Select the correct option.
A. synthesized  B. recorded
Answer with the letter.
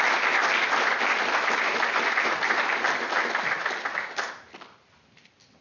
B